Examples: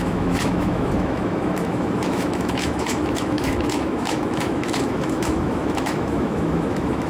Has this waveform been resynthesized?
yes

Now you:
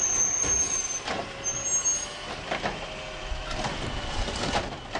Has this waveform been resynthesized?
no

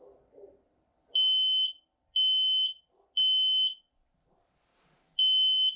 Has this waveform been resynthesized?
no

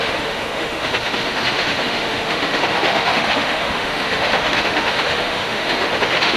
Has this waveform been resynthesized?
yes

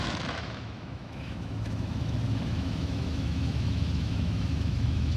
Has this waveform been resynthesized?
yes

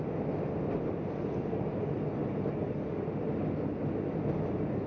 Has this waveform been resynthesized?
no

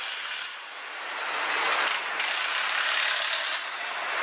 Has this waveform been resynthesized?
no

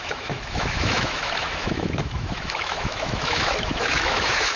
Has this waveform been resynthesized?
yes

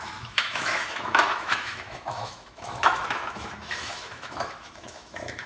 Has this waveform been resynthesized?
yes